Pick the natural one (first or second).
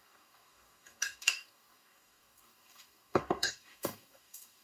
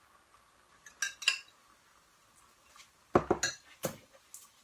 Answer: second